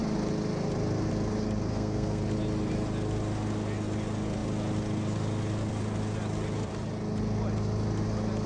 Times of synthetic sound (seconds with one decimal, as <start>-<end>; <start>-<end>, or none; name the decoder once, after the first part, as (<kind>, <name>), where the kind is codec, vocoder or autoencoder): 1.7-2.2 (codec, SNAC)